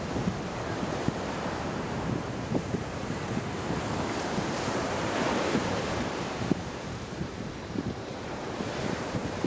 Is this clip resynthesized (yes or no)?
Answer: yes